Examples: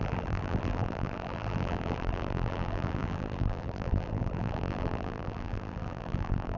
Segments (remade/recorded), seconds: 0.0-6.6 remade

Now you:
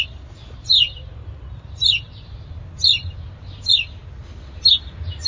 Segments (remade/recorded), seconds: 0.0-1.2 recorded; 1.2-2.2 remade; 2.2-5.3 recorded